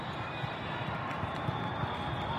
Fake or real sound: real